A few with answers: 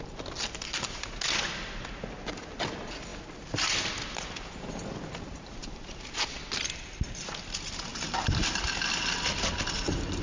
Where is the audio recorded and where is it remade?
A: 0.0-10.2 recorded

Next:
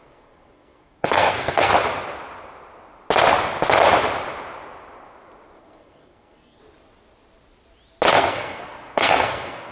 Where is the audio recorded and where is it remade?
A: 0.0-1.7 remade; 1.7-5.6 recorded; 5.6-6.6 remade; 6.6-8.1 recorded; 8.1-9.7 remade

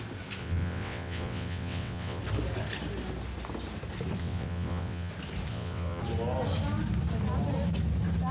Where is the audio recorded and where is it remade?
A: 0.0-0.4 recorded; 0.4-2.2 remade; 2.2-4.2 recorded; 4.2-5.1 remade; 5.1-5.5 recorded; 5.5-6.0 remade; 6.0-8.3 recorded

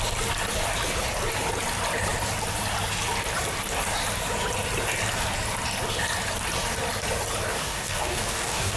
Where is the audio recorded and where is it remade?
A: 0.0-7.5 recorded; 7.5-8.8 remade

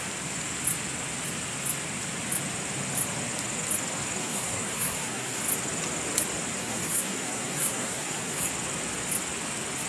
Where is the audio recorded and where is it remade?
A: 0.0-4.2 recorded; 4.2-5.4 remade; 5.4-6.6 recorded; 6.6-8.5 remade; 8.5-9.9 recorded